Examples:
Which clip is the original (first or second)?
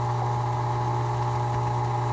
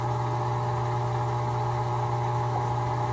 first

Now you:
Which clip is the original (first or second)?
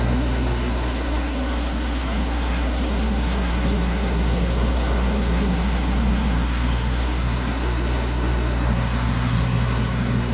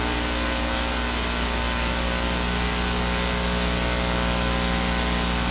second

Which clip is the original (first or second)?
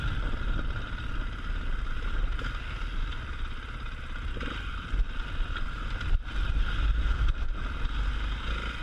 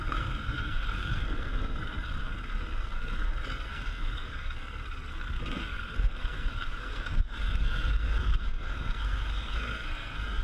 first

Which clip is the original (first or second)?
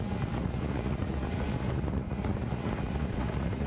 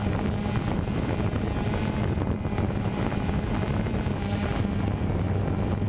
second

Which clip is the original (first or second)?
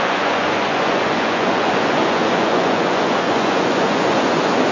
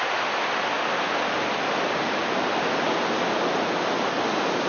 second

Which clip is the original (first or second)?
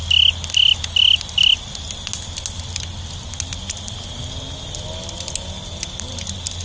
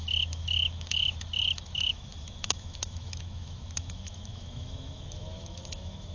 first